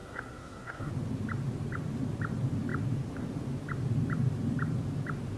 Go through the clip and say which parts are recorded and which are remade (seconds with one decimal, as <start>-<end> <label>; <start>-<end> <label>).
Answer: 0.0-0.9 remade; 0.9-5.4 recorded